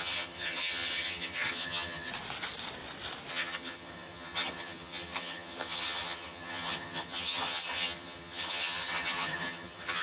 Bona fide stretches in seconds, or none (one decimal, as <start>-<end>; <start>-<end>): 2.1-3.3